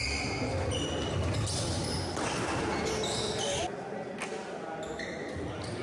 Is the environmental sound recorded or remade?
recorded